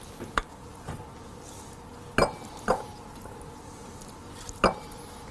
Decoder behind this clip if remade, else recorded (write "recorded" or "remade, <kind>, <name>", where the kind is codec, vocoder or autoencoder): recorded